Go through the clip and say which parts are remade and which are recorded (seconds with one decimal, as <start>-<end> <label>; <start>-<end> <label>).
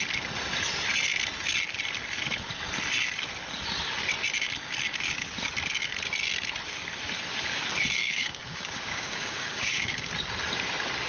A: 0.0-8.0 recorded; 8.0-10.1 remade; 10.1-11.1 recorded